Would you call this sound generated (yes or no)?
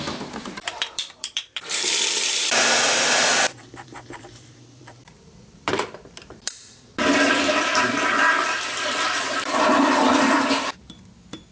yes